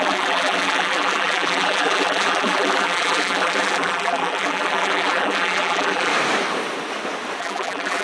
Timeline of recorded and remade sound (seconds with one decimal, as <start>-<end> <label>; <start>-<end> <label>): 0.0-6.1 remade; 6.1-7.4 recorded; 7.4-8.0 remade